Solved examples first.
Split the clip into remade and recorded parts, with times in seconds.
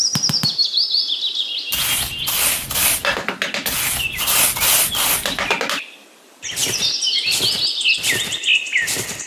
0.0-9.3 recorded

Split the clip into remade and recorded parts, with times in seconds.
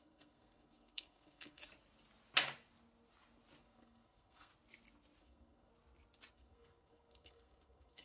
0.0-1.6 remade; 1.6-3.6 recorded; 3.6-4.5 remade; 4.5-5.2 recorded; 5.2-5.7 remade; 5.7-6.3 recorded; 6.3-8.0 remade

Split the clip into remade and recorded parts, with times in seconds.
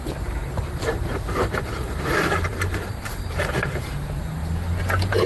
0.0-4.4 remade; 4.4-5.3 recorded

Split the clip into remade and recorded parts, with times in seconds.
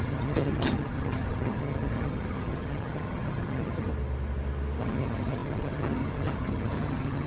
0.0-3.9 remade; 3.9-4.8 recorded; 4.8-7.3 remade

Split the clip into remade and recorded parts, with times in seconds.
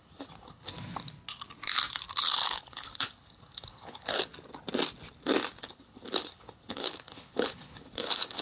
0.0-0.7 remade; 0.7-2.1 recorded; 2.1-4.3 remade; 4.3-5.7 recorded; 5.7-8.4 remade